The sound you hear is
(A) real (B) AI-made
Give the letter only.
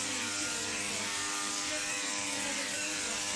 B